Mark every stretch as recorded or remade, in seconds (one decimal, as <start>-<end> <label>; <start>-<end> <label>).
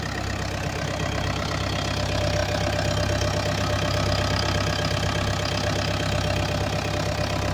0.0-7.5 recorded